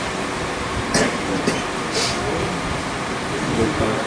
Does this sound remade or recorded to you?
recorded